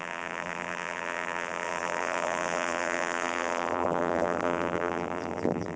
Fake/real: fake